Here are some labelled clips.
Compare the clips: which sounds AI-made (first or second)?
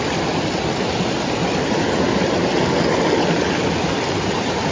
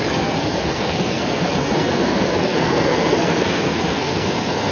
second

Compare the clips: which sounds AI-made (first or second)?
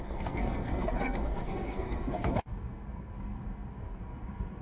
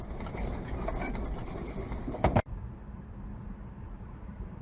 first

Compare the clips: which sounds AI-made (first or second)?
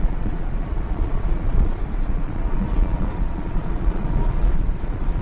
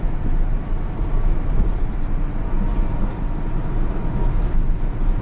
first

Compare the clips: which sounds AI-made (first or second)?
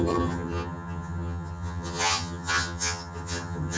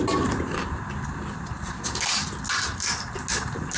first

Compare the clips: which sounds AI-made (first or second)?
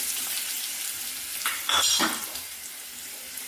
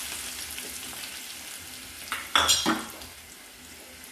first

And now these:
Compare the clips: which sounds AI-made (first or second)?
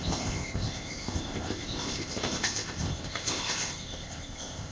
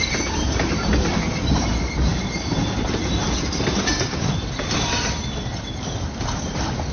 first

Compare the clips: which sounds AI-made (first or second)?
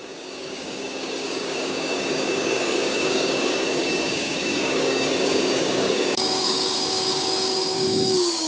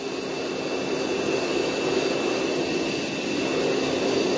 first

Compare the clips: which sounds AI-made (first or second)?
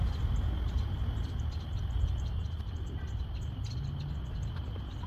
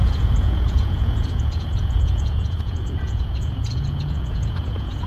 second